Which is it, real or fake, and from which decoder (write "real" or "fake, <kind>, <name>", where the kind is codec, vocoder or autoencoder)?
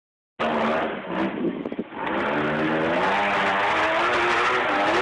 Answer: real